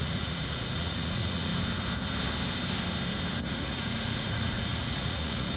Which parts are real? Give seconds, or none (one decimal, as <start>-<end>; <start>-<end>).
1.5-3.4